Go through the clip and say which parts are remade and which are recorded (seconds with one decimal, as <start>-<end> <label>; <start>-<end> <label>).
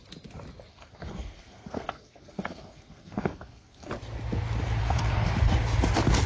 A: 0.0-0.7 recorded; 0.7-3.9 remade; 3.9-4.8 recorded; 4.8-5.4 remade; 5.4-6.3 recorded